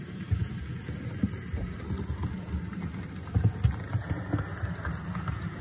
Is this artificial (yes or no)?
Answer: no